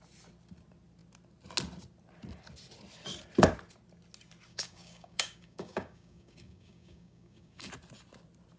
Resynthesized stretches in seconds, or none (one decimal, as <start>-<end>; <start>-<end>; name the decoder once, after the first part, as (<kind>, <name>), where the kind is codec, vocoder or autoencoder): 4.5-7.7 (codec, DAC)